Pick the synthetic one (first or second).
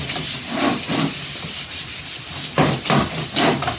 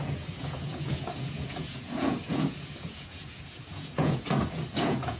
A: second